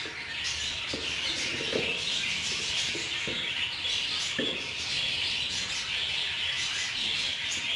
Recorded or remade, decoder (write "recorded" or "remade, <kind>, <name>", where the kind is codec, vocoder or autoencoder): recorded